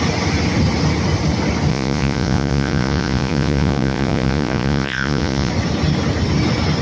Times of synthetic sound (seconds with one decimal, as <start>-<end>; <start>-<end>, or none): 1.7-5.5